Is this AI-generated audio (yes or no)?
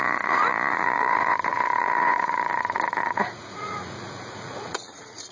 yes